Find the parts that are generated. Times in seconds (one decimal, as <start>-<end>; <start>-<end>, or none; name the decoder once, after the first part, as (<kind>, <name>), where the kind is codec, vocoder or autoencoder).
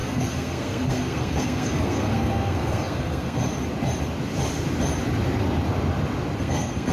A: 0.0-3.4 (codec, SNAC); 6.4-6.9